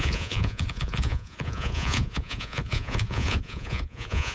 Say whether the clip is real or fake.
fake